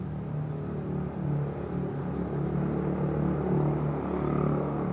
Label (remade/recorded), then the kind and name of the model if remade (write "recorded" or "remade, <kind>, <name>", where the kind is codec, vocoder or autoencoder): recorded